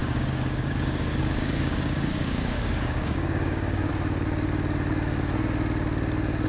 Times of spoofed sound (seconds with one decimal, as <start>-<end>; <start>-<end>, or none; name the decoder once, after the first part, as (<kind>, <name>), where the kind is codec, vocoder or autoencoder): 0.0-3.9 (codec, DAC)